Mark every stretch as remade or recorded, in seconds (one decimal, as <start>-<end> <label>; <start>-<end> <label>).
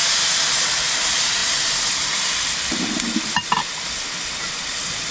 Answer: 0.0-0.9 recorded; 0.9-1.4 remade; 1.4-4.5 recorded; 4.5-5.1 remade